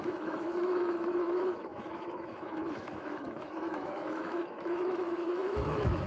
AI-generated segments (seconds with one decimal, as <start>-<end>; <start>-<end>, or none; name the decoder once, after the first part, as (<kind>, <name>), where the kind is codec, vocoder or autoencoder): 0.0-6.1 (autoencoder, DAC-VAE)